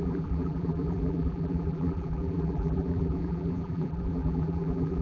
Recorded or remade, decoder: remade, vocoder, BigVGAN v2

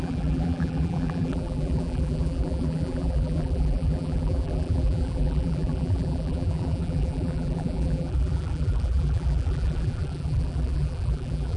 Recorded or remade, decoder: remade, vocoder, BigVGAN v2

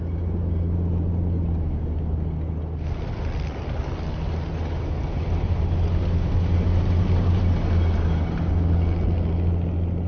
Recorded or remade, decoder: recorded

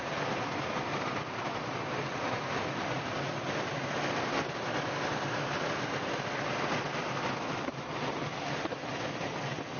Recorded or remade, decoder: recorded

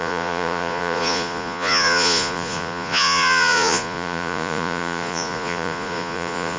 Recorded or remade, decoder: remade, vocoder, Vocos